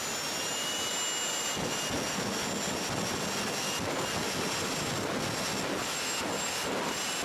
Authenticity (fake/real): real